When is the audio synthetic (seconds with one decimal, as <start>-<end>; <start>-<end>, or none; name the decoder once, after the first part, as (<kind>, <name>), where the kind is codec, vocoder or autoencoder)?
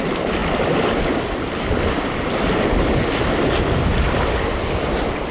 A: none